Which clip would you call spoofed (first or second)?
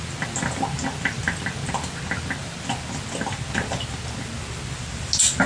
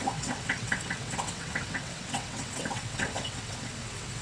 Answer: second